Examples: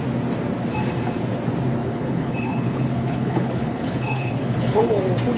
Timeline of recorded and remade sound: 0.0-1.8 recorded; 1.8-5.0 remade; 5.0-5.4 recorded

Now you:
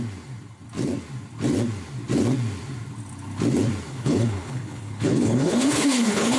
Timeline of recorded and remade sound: 0.0-3.9 recorded; 3.9-6.4 remade

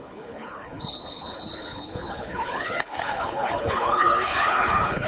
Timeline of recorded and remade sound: 0.0-5.1 remade